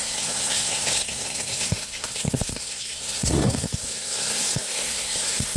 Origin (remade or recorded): remade